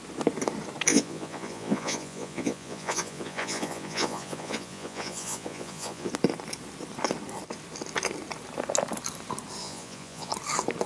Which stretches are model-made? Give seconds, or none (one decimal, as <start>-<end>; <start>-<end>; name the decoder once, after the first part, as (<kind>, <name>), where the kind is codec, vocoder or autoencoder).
0.9-6.1 (vocoder, Vocos); 9.6-10.3